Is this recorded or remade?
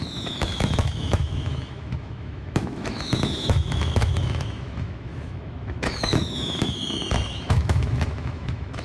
remade